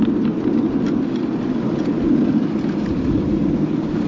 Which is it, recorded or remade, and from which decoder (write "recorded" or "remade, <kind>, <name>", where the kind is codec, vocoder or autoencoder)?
recorded